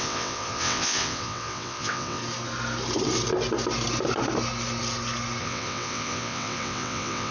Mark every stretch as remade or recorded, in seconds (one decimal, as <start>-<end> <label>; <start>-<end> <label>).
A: 0.0-2.2 remade; 2.2-5.4 recorded; 5.4-7.3 remade